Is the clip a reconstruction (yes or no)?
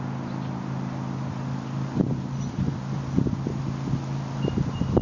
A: no